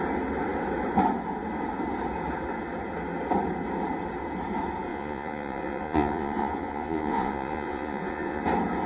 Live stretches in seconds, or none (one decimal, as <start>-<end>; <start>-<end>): 0.0-4.9; 8.4-8.9